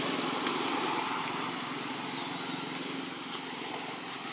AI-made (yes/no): no